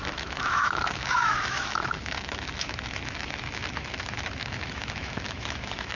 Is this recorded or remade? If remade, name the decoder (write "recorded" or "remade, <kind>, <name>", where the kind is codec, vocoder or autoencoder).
remade, autoencoder, DAC-VAE